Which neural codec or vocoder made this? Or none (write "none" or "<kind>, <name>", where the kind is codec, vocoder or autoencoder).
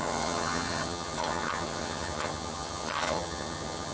vocoder, HiFi-GAN